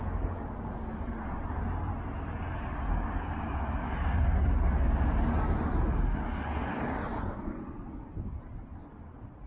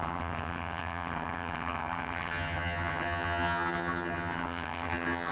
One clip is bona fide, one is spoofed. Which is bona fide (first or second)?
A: first